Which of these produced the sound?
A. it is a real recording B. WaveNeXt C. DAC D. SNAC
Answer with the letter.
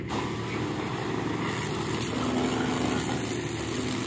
A